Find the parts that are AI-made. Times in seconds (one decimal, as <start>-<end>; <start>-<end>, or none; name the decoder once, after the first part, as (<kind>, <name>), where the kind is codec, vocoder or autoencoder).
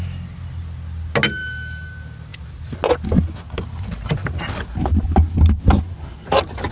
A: 1.4-1.9 (autoencoder, DAC-VAE)